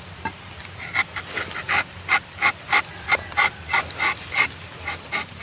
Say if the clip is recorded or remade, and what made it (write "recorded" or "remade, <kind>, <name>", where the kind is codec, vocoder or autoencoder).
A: recorded